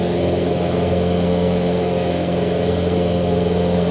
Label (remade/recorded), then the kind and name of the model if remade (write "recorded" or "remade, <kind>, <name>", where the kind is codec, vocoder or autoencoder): remade, codec, SNAC